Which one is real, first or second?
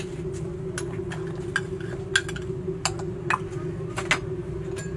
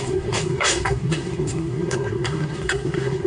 first